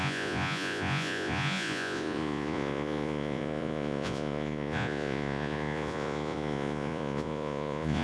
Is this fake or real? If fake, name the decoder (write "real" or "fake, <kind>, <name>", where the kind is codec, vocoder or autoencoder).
fake, vocoder, Vocos